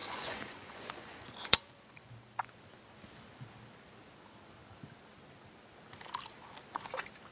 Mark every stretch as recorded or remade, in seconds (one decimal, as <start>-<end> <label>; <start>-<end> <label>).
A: 0.0-2.1 remade; 2.1-7.3 recorded